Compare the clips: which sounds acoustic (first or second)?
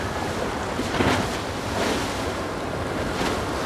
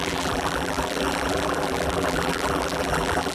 first